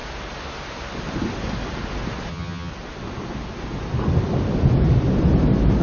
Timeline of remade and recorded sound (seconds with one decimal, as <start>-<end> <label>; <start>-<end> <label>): 0.0-2.3 recorded; 2.3-2.7 remade; 2.7-5.8 recorded